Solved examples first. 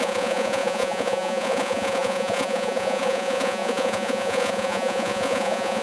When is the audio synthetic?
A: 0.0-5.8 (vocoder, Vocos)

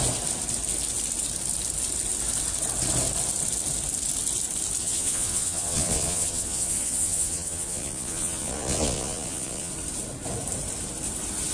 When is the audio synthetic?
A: 4.8-9.7 (vocoder, Vocos)

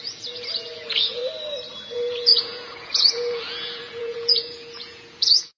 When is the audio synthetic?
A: 0.0-1.2 (vocoder, Vocos); 1.7-5.6